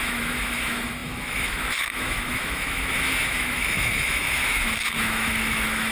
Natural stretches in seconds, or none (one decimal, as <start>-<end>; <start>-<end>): none